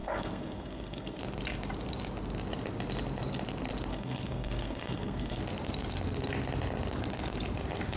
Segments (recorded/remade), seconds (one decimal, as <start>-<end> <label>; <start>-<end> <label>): 0.0-1.2 remade; 1.2-3.9 recorded; 3.9-5.4 remade; 5.4-8.0 recorded